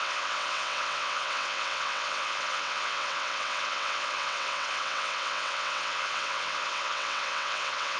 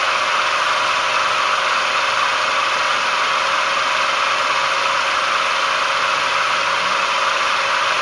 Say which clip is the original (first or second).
second